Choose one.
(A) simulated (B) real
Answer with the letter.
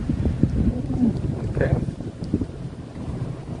A